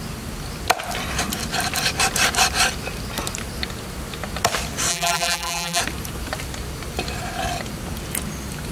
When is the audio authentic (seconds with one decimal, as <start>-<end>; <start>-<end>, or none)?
0.0-4.9; 5.8-8.7